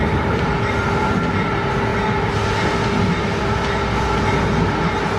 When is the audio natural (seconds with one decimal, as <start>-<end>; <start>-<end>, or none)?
0.0-5.2